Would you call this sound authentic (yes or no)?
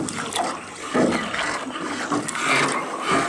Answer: yes